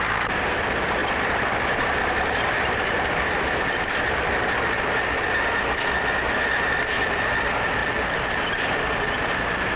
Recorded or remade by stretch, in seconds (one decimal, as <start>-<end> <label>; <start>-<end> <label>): 0.0-1.0 recorded; 1.0-4.1 remade; 4.1-9.8 recorded